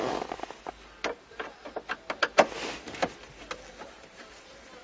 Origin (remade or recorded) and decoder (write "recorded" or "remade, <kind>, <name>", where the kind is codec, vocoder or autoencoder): recorded